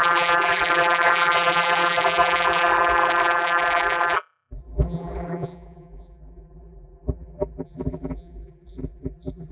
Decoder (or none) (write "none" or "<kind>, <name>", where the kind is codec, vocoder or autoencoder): vocoder, BigVGAN v2